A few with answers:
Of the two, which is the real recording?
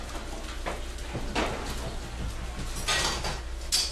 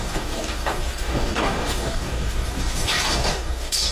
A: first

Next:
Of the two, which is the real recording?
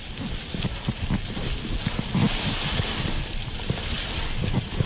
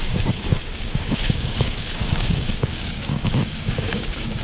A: first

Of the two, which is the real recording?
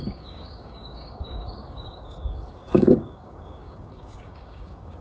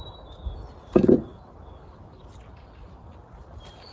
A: second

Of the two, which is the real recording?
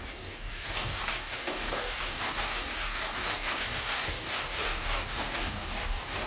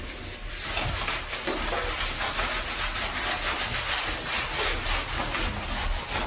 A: second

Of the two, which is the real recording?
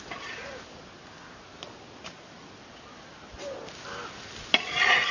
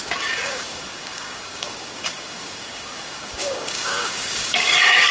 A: first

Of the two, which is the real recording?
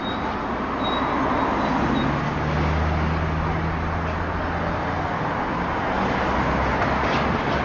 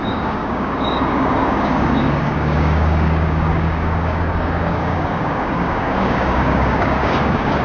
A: first